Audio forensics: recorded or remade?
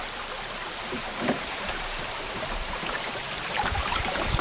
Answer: remade